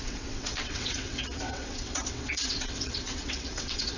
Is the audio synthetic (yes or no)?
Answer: yes